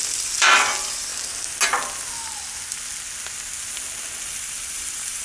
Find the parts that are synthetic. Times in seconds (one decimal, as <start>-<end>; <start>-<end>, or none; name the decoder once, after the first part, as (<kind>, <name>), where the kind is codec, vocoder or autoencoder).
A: 0.0-1.1 (vocoder, BigVGAN v2); 4.2-5.2